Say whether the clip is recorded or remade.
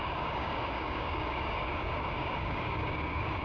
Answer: remade